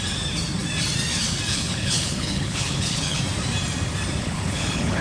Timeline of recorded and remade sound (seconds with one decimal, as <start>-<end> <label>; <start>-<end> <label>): 0.0-1.5 recorded; 1.5-3.2 remade; 3.2-4.2 recorded; 4.2-5.0 remade